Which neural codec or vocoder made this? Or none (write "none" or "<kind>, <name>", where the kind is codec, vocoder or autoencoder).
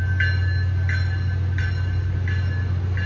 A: none